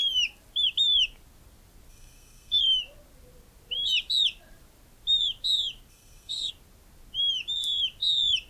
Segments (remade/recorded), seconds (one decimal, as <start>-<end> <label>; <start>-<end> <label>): 0.0-1.9 recorded; 1.9-2.6 remade; 2.6-5.9 recorded; 5.9-6.5 remade; 6.5-8.5 recorded